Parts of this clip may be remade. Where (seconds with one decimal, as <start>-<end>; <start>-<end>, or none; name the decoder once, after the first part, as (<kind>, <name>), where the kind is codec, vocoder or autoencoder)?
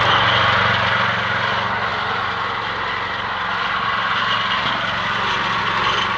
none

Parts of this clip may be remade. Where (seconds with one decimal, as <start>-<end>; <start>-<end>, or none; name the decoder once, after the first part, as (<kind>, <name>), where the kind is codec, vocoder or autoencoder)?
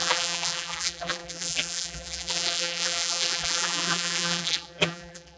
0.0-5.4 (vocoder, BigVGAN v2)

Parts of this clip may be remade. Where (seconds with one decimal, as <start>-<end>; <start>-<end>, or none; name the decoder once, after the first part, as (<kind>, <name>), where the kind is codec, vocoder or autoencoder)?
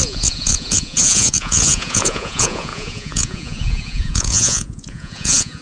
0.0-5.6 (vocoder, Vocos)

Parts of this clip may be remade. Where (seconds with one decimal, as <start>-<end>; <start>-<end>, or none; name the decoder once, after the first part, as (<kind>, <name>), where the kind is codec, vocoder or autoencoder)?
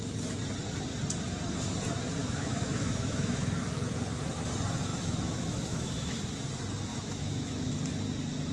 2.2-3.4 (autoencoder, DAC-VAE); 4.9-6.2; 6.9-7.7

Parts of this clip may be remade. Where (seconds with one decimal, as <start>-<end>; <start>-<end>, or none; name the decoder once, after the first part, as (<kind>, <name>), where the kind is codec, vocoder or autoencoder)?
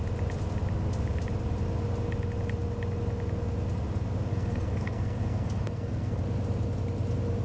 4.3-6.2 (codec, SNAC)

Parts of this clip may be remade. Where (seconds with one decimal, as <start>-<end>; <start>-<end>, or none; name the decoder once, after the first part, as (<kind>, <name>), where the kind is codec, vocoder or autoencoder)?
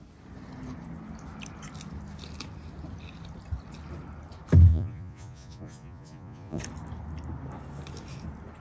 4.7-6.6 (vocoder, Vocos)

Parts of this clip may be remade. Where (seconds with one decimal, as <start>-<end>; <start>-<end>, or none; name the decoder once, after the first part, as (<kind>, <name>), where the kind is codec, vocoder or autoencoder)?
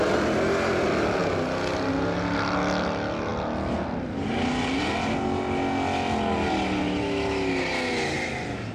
none